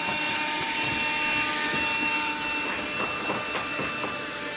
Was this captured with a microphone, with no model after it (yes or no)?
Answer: yes